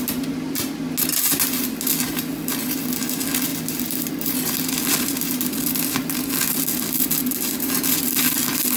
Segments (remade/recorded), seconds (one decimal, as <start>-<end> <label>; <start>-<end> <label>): 0.0-8.8 recorded